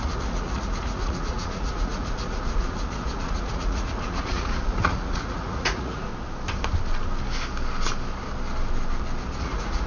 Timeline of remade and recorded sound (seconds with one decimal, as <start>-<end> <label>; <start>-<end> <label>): 0.0-6.1 remade; 6.1-9.4 recorded; 9.4-9.9 remade